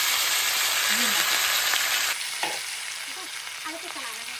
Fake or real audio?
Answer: real